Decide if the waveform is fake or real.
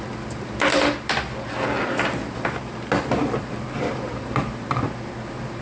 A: fake